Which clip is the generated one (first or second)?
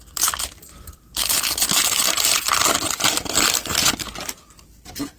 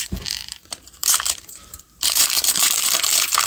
second